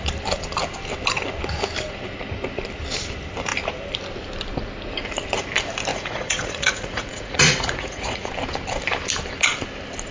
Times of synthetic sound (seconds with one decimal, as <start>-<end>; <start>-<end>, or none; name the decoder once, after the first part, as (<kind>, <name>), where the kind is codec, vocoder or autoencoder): 5.9-8.3 (vocoder, Vocos)

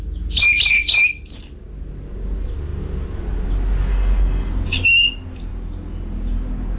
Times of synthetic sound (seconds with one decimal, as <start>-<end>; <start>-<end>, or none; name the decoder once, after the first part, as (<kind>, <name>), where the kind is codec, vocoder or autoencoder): 3.9-4.5 (codec, SNAC)